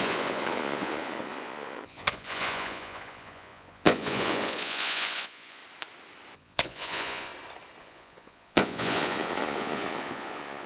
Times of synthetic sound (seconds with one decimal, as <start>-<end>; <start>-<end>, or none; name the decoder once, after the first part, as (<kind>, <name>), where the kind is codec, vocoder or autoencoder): 0.0-5.6 (vocoder, Vocos); 6.3-7.3; 7.8-10.7